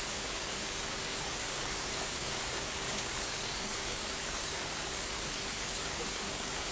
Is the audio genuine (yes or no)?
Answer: no